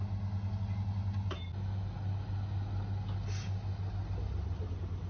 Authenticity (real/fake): real